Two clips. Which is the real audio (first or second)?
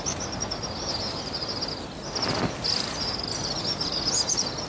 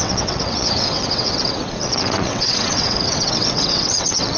first